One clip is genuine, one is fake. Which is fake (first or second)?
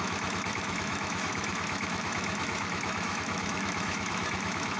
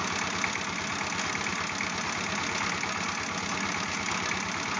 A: first